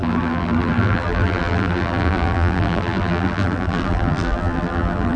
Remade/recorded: remade